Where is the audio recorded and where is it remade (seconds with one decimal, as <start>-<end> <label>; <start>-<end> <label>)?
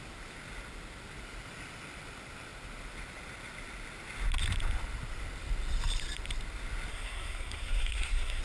0.0-6.9 recorded; 6.9-8.4 remade